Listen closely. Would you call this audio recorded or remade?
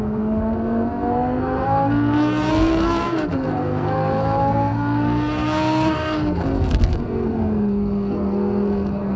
remade